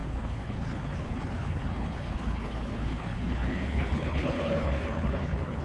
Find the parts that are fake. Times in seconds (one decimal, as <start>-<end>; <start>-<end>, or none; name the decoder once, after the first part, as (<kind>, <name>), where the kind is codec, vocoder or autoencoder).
0.0-5.6 (codec, HILCodec)

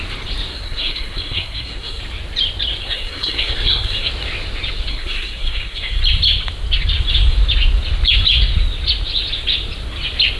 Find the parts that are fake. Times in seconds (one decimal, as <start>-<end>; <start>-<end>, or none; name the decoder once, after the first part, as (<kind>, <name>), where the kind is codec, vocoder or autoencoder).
0.5-2.0 (codec, SNAC); 2.8-4.1; 4.9-6.0